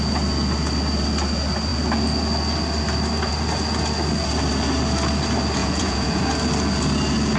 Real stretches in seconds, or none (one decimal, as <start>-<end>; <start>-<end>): 0.0-5.6; 6.2-7.4